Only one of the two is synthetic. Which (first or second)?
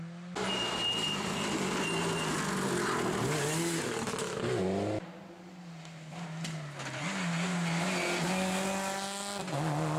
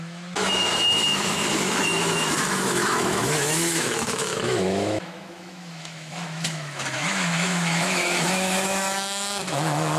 second